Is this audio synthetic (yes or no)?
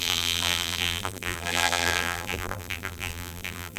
yes